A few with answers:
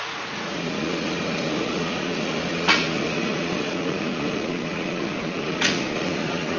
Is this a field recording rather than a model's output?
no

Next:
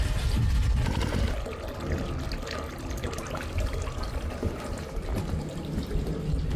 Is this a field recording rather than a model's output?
yes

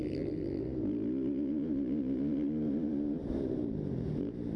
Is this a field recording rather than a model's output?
yes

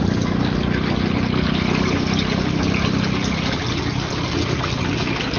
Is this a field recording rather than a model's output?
yes